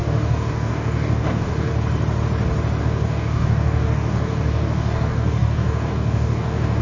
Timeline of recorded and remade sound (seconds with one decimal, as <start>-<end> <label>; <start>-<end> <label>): 0.0-1.7 remade; 1.7-2.8 recorded; 2.8-6.8 remade